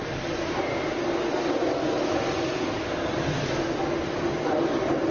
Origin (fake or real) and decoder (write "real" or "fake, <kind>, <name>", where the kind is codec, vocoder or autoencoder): real